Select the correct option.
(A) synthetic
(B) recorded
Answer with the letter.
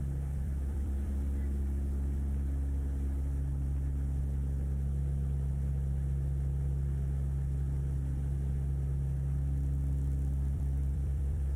A